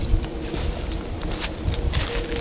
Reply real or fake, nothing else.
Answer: real